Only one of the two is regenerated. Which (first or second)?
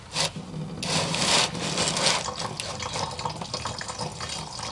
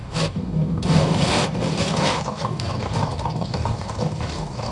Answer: second